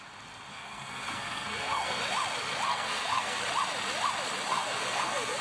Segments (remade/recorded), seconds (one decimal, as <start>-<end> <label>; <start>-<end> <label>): 0.0-0.5 recorded; 0.5-2.0 remade; 2.0-2.7 recorded; 2.7-3.4 remade; 3.4-4.5 recorded; 4.5-5.4 remade